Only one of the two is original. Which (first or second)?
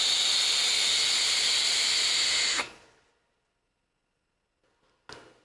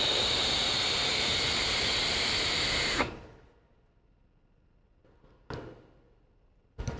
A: first